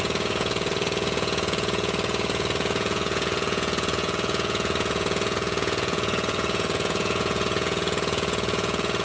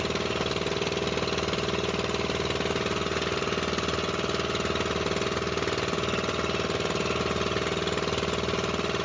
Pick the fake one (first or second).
first